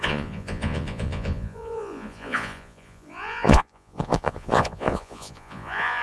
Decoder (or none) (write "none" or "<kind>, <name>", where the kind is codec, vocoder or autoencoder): vocoder, Vocos